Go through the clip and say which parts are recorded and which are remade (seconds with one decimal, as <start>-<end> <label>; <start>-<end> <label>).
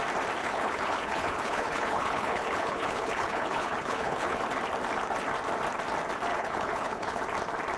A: 0.0-0.4 recorded; 0.4-4.4 remade; 4.4-6.3 recorded; 6.3-7.2 remade; 7.2-7.8 recorded